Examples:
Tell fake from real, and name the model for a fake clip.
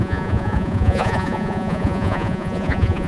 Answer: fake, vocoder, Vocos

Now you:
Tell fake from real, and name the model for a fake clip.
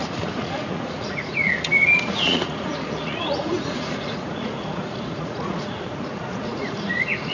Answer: fake, vocoder, Vocos